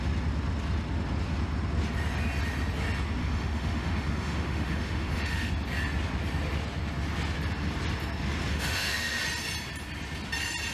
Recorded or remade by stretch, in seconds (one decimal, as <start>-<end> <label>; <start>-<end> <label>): 0.0-3.2 recorded; 3.2-5.5 remade; 5.5-8.5 recorded; 8.5-9.2 remade; 9.2-10.7 recorded